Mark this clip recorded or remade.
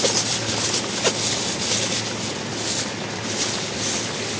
recorded